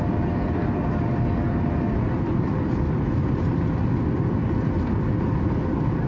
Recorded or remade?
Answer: recorded